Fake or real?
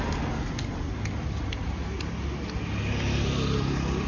real